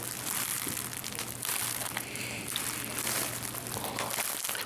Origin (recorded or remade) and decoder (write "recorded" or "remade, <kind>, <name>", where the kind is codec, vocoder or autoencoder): recorded